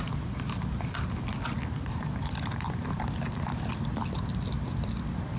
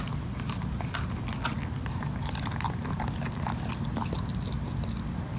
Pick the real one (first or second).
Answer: second